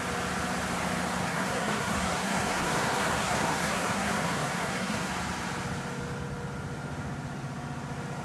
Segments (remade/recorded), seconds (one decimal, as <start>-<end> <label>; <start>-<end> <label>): 0.0-1.2 recorded; 1.2-5.1 remade; 5.1-8.2 recorded